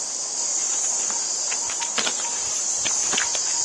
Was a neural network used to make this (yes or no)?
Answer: yes